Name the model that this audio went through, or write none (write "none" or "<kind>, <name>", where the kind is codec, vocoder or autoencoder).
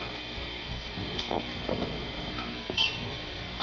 codec, SNAC